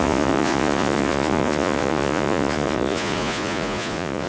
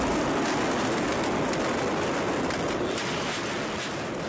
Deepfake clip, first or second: first